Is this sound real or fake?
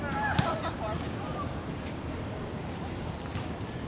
real